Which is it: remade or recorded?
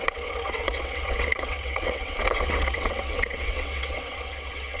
remade